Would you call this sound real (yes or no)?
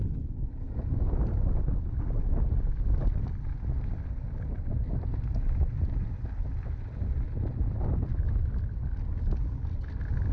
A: yes